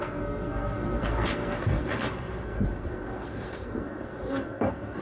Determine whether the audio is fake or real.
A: fake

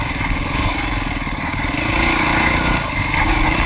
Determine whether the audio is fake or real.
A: fake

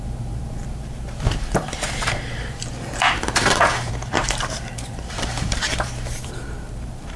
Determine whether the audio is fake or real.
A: fake